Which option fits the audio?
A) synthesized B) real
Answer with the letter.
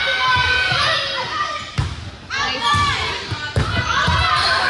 B